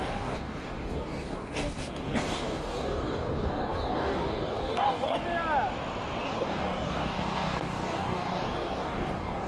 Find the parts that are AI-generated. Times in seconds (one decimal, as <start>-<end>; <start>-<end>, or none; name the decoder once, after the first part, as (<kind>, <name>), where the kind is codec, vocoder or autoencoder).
0.0-5.2 (codec, DAC); 6.2-9.5